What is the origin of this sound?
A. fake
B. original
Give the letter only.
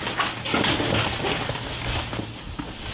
B